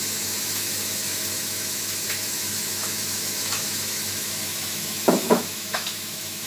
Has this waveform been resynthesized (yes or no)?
yes